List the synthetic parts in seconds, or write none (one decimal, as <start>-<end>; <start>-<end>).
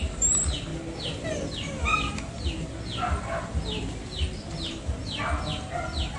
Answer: none